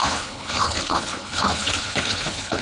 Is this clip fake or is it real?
fake